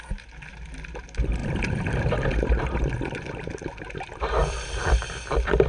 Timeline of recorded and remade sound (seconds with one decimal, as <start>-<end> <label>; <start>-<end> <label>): 0.0-1.4 recorded; 1.4-2.5 remade; 2.5-4.4 recorded; 4.4-5.7 remade